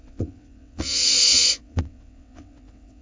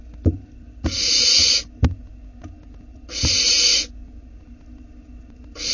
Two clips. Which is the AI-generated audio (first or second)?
first